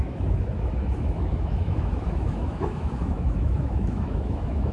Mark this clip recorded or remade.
remade